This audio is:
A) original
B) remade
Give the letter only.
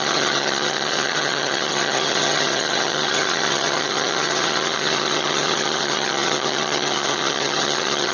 B